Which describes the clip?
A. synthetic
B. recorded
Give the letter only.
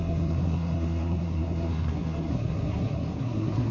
A